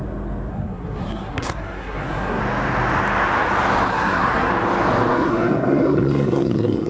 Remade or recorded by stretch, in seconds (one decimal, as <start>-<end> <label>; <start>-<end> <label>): 0.0-0.5 recorded; 0.5-2.4 remade; 2.4-3.9 recorded; 3.9-4.5 remade; 4.5-5.1 recorded; 5.1-6.9 remade